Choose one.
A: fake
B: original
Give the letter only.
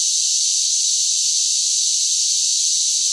B